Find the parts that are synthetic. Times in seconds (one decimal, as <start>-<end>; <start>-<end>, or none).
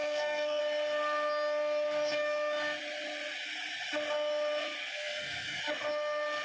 0.0-0.6; 4.8-5.6